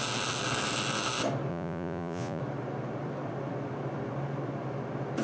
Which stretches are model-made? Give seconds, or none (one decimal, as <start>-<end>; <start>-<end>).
1.5-2.4